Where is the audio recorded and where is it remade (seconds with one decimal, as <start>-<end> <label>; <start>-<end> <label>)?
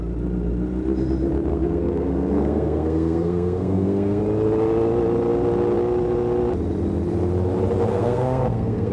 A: 0.0-1.5 recorded; 1.5-4.2 remade; 4.2-7.9 recorded; 7.9-8.9 remade